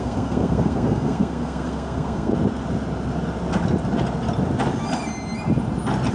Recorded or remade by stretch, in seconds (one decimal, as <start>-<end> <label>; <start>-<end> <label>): 0.0-2.3 remade; 2.3-6.1 recorded